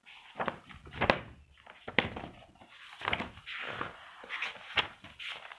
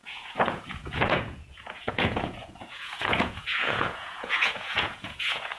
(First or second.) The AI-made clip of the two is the second